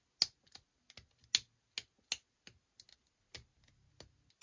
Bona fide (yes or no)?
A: yes